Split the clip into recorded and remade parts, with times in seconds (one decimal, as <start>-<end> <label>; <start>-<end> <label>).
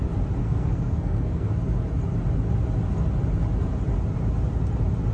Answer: 0.0-0.4 recorded; 0.4-1.5 remade; 1.5-5.1 recorded